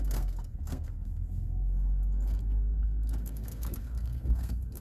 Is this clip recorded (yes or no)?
no